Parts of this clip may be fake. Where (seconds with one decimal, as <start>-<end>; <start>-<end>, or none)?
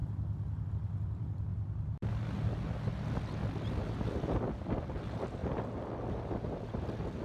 0.7-1.5; 3.9-5.4